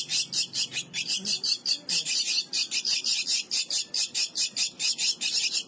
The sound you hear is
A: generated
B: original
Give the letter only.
B